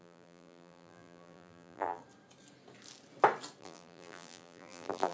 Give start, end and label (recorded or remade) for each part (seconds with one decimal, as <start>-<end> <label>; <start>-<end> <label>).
0.0-2.0 remade; 2.0-3.6 recorded; 3.6-5.1 remade